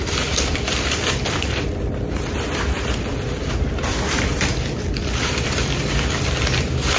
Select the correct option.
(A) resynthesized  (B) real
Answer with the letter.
A